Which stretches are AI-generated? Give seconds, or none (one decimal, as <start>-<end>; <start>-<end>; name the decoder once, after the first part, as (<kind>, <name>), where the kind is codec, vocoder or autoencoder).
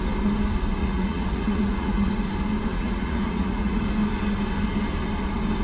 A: 0.8-2.3 (vocoder, Vocos); 2.7-3.8